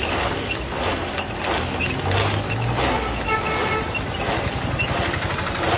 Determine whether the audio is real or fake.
real